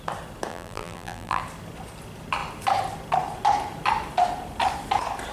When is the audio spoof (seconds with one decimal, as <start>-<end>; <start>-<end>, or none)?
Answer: 0.5-1.4